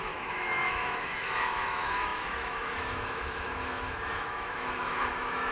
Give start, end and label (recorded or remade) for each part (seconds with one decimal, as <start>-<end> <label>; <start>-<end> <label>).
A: 0.0-5.5 remade